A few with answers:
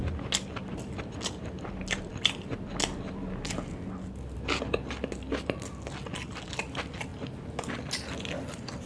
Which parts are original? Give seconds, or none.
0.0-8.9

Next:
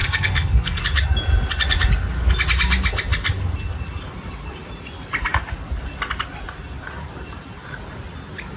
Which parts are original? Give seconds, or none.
0.8-8.6

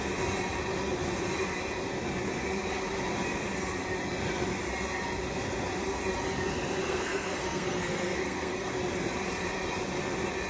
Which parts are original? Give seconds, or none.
0.0-6.8; 8.7-10.5